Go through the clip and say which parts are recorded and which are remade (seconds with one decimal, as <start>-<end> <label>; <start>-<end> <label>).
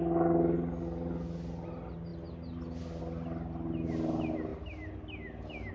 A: 0.0-5.7 recorded